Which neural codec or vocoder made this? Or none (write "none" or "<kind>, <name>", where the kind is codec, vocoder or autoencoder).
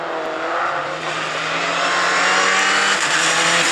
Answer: none